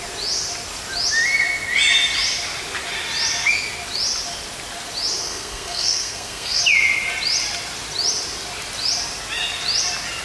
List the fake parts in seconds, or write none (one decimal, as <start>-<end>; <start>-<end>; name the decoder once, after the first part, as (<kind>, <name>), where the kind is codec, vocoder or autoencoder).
5.2-6.6 (codec, SNAC)